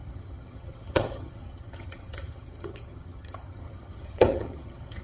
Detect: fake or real fake